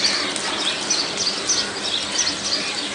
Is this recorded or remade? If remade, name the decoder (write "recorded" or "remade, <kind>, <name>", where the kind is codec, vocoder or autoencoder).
recorded